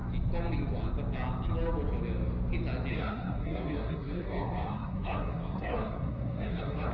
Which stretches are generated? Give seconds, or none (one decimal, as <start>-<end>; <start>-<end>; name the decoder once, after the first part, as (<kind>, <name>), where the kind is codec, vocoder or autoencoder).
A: 2.9-6.9 (codec, SNAC)